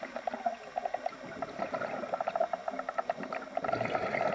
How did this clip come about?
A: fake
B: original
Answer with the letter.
B